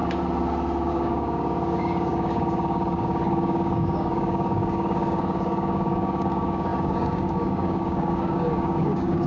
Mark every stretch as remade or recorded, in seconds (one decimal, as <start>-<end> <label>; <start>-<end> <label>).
0.0-0.9 recorded; 0.9-9.3 remade